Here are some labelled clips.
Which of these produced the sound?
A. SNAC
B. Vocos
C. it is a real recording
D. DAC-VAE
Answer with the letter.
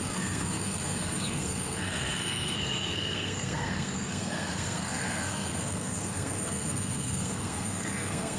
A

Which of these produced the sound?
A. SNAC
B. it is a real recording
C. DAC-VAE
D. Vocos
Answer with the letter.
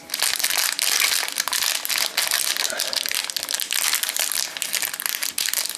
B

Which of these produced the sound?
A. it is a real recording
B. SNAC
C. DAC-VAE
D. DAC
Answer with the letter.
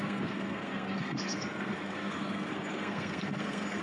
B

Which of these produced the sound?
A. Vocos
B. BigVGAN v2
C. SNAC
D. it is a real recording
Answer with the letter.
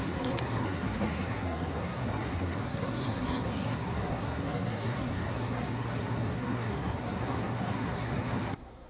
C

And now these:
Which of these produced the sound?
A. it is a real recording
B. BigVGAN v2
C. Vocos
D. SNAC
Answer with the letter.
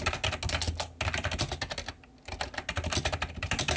A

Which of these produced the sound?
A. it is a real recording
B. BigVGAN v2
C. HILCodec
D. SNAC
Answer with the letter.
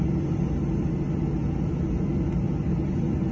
A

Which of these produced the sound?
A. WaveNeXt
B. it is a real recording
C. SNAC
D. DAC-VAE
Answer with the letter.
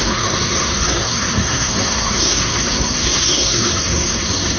C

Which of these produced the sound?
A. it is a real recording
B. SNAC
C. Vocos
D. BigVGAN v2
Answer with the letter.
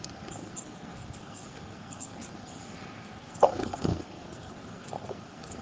B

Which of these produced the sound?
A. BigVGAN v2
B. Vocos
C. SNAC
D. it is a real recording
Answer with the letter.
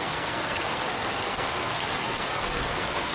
C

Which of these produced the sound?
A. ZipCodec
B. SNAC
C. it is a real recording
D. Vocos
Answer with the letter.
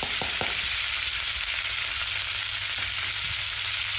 C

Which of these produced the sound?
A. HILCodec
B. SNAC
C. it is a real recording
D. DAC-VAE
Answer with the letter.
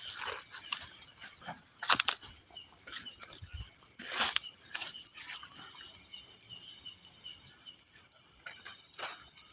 C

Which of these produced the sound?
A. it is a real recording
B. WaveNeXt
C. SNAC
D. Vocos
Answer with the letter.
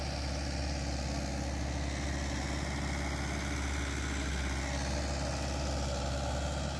A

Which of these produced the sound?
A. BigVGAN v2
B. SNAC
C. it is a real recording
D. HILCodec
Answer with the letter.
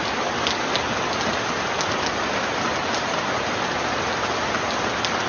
C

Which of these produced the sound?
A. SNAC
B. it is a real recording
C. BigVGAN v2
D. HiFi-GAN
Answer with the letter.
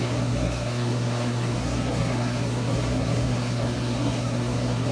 A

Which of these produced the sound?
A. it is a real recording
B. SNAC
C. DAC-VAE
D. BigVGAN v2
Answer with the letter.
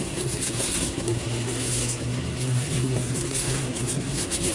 B